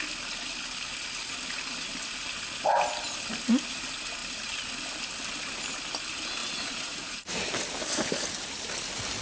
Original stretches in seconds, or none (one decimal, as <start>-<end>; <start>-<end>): 0.0-6.4; 7.3-9.2